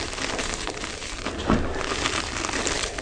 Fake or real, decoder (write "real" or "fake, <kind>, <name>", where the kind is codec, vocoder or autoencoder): real